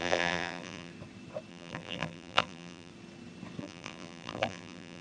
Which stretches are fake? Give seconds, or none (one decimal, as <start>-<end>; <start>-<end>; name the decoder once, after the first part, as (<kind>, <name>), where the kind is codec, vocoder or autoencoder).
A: 0.0-0.9 (vocoder, BigVGAN v2); 1.5-2.9; 3.6-5.0